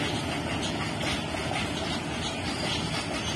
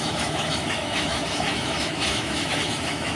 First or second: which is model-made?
second